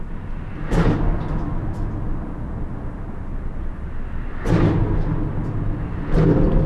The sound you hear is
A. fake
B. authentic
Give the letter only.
B